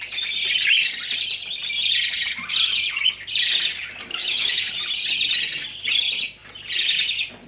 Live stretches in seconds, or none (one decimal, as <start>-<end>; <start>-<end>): 0.0-4.2; 4.7-7.5

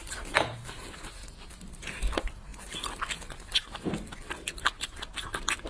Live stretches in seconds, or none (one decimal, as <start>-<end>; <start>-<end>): 0.0-5.7

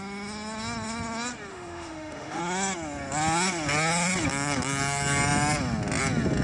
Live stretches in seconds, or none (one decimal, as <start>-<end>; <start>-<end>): 0.0-1.5; 2.4-6.4

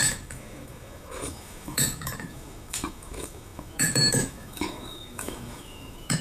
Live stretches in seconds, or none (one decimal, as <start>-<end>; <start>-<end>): none